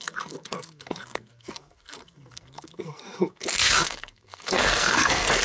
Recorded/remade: remade